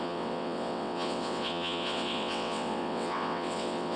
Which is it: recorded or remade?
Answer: remade